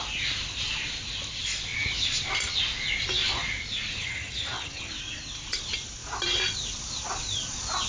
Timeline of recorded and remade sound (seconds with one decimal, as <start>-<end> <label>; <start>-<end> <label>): 0.0-3.9 recorded; 3.9-4.9 remade; 4.9-7.9 recorded